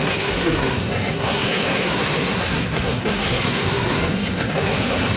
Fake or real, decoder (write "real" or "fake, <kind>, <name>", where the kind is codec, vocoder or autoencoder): fake, codec, SNAC